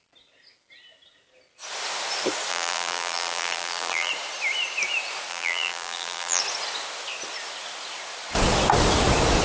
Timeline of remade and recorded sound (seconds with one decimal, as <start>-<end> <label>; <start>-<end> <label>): 0.0-2.5 recorded; 2.5-4.1 remade; 4.1-5.3 recorded; 5.3-6.4 remade; 6.4-9.4 recorded